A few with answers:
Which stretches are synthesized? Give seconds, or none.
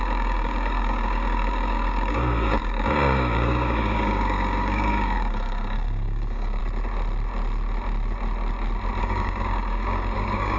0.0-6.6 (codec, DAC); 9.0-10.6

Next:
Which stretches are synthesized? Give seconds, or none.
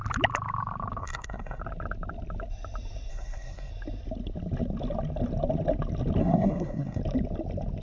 1.0-1.6 (codec, SNAC); 3.1-3.7; 6.2-7.0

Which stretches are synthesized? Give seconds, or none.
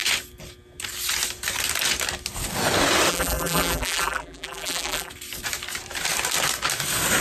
3.1-5.1 (vocoder, BigVGAN v2)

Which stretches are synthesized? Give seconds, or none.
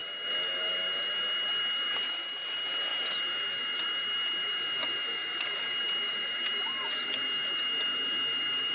none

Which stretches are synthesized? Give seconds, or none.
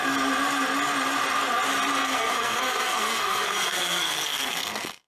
2.0-5.1 (codec, SNAC)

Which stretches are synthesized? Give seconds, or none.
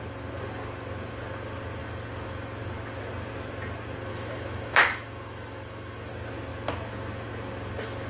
4.1-6.1 (autoencoder, DAC-VAE)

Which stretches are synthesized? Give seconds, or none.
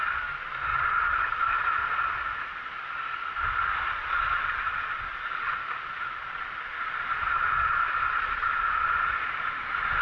0.7-3.2 (vocoder, Vocos); 4.0-9.1